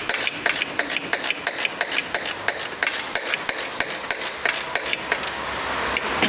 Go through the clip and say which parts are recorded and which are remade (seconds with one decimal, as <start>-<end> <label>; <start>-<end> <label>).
0.0-6.3 recorded